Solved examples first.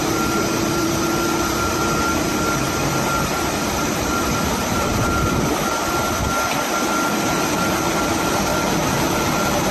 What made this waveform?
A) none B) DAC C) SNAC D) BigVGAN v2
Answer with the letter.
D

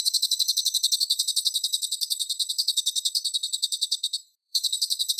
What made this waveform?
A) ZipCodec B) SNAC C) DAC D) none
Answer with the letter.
B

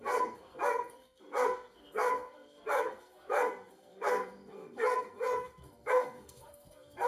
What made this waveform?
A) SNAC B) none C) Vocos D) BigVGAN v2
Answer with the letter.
A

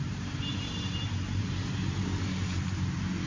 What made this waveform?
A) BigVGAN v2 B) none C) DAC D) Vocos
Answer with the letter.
A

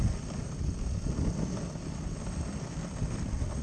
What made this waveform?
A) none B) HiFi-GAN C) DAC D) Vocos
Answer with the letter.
A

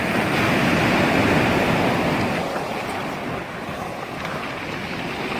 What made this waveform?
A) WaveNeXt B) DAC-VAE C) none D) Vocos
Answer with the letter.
C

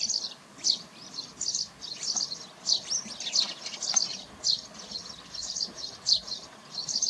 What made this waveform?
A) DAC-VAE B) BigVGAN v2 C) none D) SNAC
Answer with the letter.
C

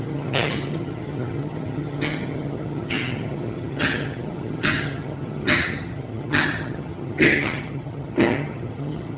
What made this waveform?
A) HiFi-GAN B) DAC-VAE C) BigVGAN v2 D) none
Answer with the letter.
A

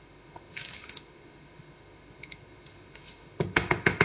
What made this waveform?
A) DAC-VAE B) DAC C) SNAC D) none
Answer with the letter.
A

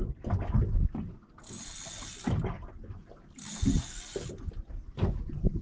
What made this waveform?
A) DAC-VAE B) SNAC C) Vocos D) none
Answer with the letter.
D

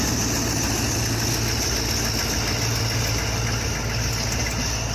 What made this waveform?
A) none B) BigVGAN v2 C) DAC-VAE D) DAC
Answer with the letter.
A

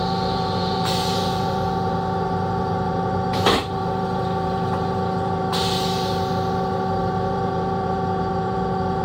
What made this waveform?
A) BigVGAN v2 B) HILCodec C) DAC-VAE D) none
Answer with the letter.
A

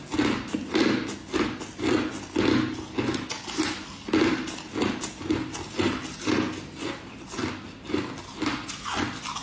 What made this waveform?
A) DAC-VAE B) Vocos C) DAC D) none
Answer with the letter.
D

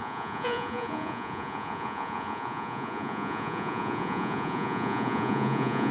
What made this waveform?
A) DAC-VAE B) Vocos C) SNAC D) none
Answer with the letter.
B